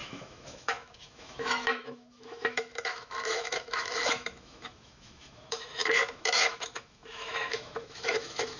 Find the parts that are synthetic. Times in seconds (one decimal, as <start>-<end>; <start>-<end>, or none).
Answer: 0.0-8.6